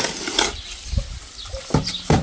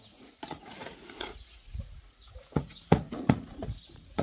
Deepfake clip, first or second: second